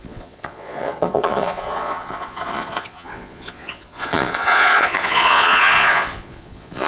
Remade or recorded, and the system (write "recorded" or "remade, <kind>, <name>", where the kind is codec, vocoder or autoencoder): remade, vocoder, Vocos